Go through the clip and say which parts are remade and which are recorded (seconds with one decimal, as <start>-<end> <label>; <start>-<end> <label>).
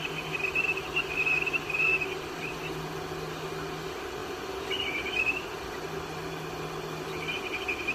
0.0-1.9 recorded; 1.9-2.5 remade; 2.5-4.2 recorded; 4.2-6.3 remade; 6.3-7.9 recorded